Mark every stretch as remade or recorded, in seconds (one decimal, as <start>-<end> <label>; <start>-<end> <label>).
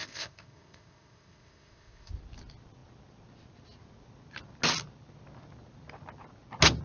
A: 0.0-2.1 remade; 2.1-6.8 recorded